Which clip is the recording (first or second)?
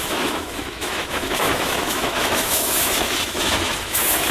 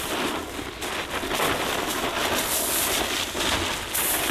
second